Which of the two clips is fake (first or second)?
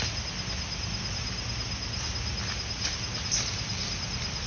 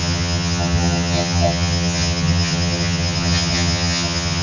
second